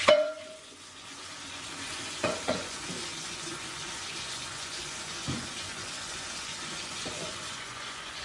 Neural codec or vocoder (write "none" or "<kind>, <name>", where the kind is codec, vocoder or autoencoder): vocoder, Vocos